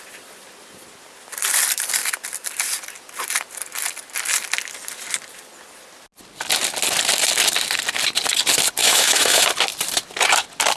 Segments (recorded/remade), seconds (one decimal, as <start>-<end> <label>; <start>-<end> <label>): 0.0-8.8 recorded; 8.8-9.5 remade; 9.5-10.8 recorded